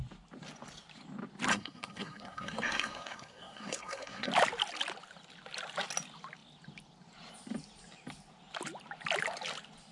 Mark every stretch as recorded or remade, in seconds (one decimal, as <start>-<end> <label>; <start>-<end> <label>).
0.0-1.5 recorded; 1.5-4.3 remade; 4.3-9.9 recorded